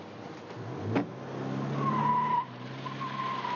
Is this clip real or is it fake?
real